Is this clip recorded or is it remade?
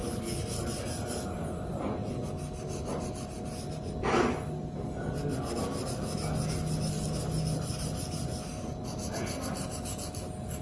recorded